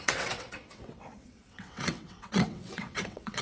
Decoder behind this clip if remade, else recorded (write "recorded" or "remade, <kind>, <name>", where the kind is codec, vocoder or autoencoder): remade, vocoder, WaveNeXt